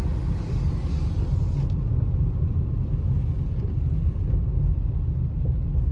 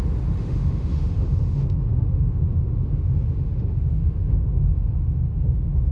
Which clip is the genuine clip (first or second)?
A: first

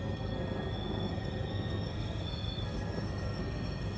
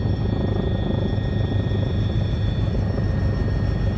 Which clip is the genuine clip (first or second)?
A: second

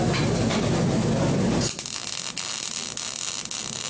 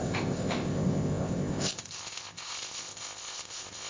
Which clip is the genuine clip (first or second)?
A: first